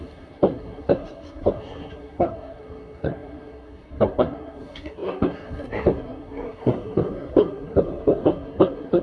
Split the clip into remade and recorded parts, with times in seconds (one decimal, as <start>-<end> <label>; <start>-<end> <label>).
0.0-9.0 remade